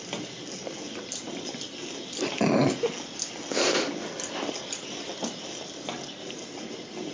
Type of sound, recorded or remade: recorded